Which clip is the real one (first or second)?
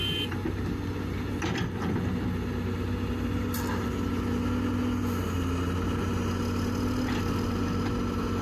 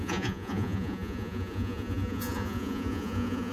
first